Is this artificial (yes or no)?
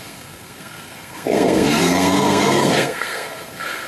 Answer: yes